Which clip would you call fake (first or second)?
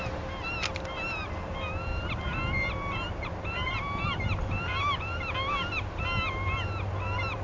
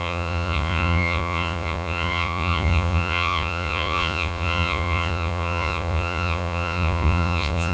second